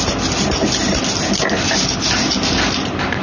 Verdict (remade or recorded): recorded